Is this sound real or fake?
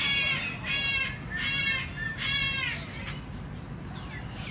real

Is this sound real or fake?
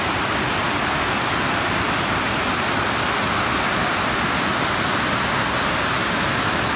real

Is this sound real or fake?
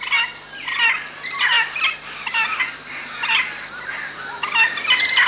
real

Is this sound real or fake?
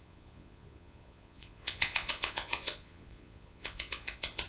fake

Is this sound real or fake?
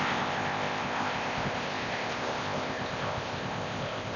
fake